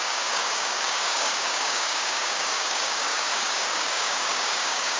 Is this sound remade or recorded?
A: remade